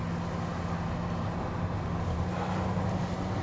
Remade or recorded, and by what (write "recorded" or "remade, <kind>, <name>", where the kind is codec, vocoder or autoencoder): recorded